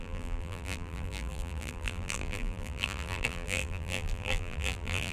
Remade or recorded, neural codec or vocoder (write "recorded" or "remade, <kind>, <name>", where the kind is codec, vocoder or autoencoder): remade, vocoder, BigVGAN v2